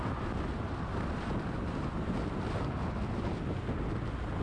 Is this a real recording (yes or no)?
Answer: yes